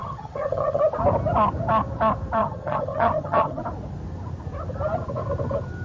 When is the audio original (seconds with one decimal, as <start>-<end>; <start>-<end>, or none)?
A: 0.8-2.4; 3.6-5.8